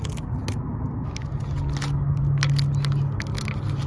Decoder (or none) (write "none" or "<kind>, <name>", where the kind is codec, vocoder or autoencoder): none